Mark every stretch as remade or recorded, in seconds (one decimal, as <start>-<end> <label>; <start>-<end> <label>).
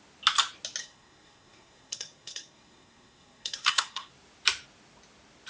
0.0-0.8 recorded; 0.8-4.1 remade; 4.1-5.5 recorded